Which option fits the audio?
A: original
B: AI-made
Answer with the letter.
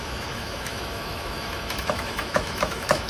B